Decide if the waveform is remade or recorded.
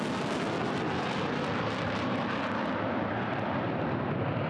recorded